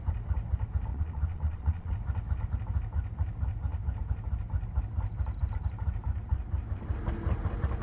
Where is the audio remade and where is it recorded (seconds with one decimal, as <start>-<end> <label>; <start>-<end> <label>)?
0.0-0.9 recorded; 0.9-1.9 remade; 1.9-7.8 recorded